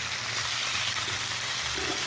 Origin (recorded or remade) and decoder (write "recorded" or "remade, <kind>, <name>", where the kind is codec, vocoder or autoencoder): remade, vocoder, BigVGAN v2